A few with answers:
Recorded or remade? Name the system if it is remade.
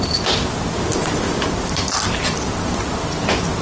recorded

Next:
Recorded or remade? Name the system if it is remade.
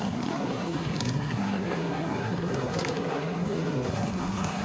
remade, codec, SNAC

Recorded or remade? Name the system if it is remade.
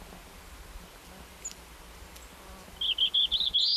recorded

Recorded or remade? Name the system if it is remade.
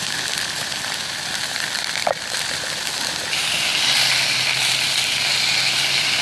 remade, vocoder, BigVGAN v2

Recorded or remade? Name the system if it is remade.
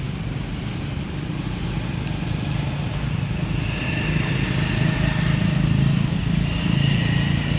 recorded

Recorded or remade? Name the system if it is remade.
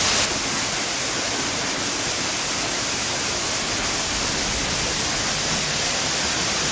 recorded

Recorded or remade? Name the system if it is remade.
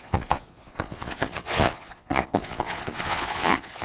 remade, vocoder, Vocos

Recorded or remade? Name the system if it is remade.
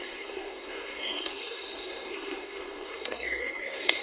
remade, codec, SNAC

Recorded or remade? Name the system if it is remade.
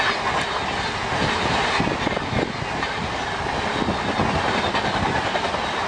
recorded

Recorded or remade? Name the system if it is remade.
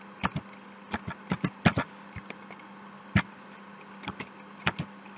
recorded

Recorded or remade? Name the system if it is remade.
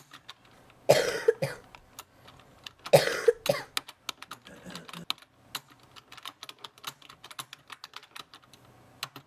recorded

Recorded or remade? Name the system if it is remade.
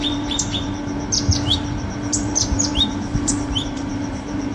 remade, vocoder, BigVGAN v2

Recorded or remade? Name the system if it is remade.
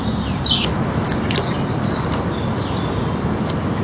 recorded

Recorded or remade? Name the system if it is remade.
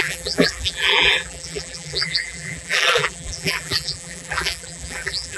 remade, vocoder, BigVGAN v2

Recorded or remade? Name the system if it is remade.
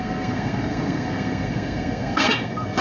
remade, codec, SNAC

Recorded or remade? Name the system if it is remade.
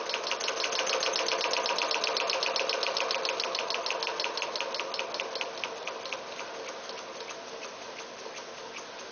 recorded